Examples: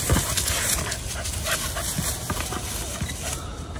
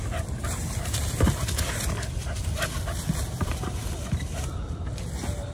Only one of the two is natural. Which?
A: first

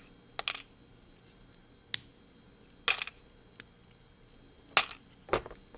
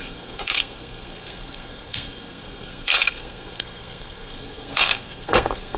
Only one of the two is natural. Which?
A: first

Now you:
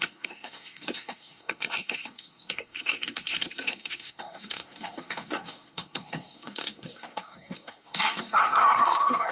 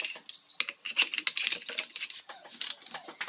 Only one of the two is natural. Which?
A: second